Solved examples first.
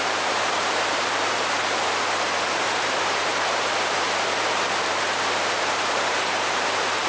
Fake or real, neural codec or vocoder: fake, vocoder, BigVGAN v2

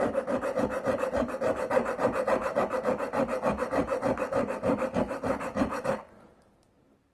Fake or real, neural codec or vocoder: fake, vocoder, BigVGAN v2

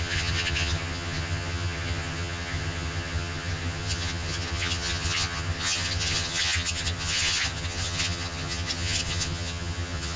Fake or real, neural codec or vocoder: fake, vocoder, HiFi-GAN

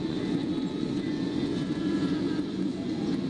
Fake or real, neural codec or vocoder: fake, vocoder, Vocos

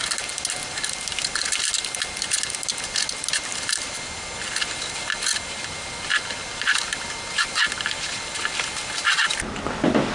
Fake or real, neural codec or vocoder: real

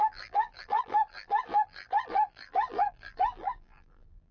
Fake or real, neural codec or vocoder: fake, vocoder, BigVGAN v2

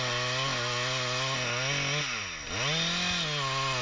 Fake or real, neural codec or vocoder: real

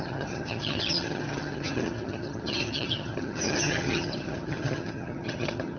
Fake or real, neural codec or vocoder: fake, vocoder, HiFi-GAN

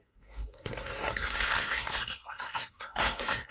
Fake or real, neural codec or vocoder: fake, codec, SNAC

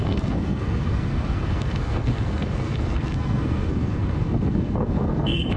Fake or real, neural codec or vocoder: fake, codec, SNAC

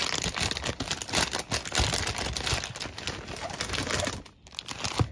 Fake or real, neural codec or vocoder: real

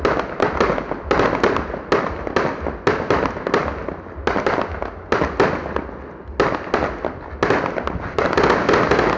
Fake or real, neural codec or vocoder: real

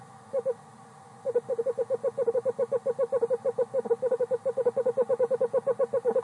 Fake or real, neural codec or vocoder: real